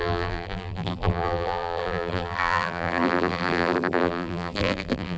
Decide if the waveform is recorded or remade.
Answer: remade